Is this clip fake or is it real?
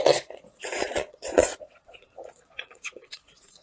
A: fake